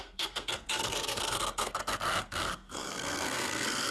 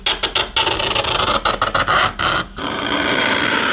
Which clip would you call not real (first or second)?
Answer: first